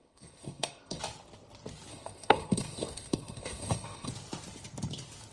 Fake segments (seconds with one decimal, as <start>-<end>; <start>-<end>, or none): 0.0-1.0; 1.9-4.1